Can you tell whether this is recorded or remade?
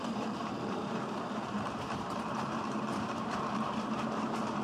remade